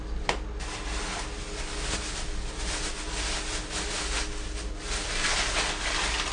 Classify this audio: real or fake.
real